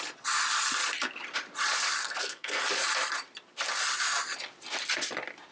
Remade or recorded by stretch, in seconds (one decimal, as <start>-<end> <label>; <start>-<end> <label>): 0.0-2.0 recorded; 2.0-2.6 remade; 2.6-5.5 recorded